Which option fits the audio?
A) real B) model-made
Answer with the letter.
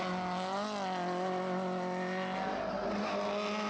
A